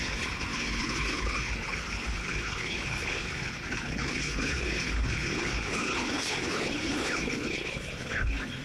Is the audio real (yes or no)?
no